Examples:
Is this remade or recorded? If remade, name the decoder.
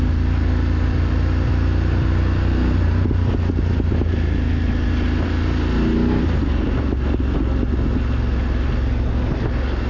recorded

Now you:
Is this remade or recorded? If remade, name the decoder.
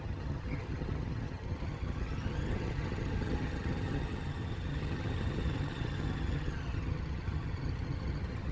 remade, vocoder, HiFi-GAN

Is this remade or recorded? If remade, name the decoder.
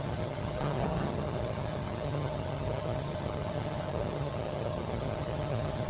remade, vocoder, HiFi-GAN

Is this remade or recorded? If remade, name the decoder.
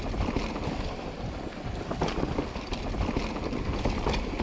recorded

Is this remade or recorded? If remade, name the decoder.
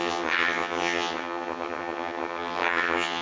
remade, vocoder, HiFi-GAN